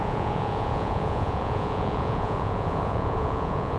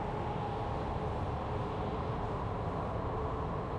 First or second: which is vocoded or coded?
first